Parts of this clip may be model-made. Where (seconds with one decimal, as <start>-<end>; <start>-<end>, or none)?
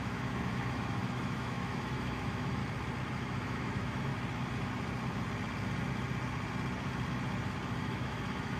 0.0-2.6; 3.2-4.1; 7.8-8.6